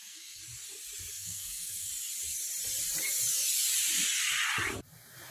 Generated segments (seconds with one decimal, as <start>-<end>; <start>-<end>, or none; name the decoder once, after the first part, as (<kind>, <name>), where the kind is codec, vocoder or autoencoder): 0.0-0.4 (codec, SNAC); 1.1-1.9